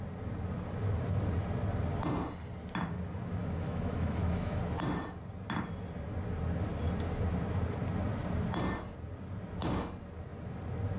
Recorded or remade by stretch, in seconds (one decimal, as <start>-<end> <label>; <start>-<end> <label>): 0.0-3.4 recorded; 3.4-4.6 remade; 4.6-11.0 recorded